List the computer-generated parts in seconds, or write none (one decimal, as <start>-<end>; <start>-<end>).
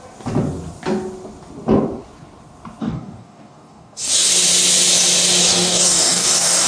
2.8-4.3; 5.4-6.7